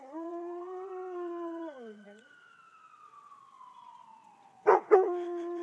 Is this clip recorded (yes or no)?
no